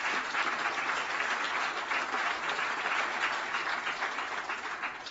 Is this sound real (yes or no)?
yes